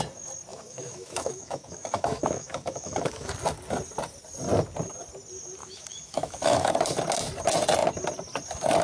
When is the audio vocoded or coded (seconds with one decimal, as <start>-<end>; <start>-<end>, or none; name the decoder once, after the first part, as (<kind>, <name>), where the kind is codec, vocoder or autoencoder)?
0.5-3.3 (autoencoder, DAC-VAE); 5.6-6.7